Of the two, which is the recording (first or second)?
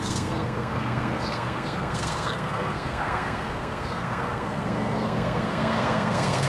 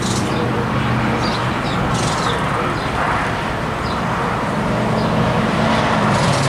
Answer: second